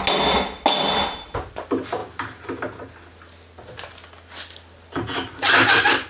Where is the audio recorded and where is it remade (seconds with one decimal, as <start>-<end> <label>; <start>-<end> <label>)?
0.0-6.1 recorded